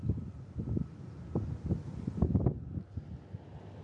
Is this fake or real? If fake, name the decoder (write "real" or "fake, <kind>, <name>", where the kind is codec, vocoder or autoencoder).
real